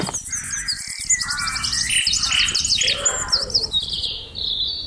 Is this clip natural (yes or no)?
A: yes